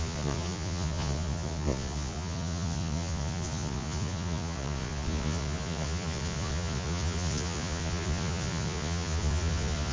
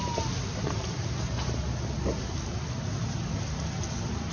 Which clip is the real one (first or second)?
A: second